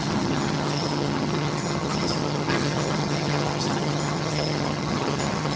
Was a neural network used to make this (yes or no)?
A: yes